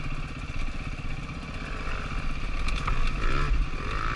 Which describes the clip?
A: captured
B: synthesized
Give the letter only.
A